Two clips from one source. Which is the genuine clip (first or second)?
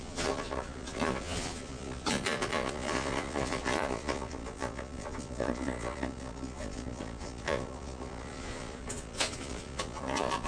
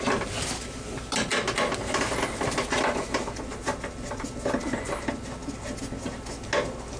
second